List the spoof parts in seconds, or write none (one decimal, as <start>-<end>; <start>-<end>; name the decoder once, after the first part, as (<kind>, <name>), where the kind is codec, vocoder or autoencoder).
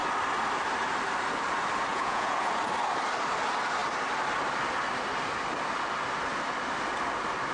1.9-2.5 (vocoder, Vocos)